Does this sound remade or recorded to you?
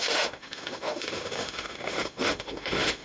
remade